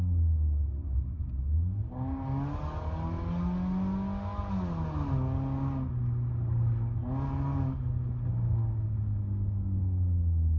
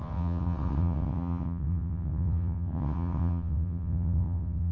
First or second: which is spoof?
second